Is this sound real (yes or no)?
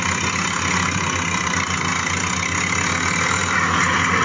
yes